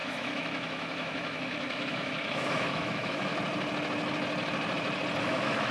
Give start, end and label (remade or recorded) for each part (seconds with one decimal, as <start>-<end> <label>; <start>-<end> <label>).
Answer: 0.0-3.3 remade; 3.3-5.2 recorded; 5.2-5.7 remade